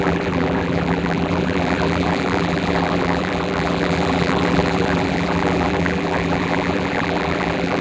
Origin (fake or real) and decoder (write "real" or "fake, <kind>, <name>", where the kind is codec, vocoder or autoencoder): fake, vocoder, BigVGAN v2